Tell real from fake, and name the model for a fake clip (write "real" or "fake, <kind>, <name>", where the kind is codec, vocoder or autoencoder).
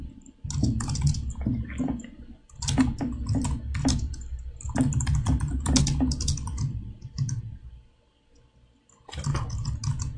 real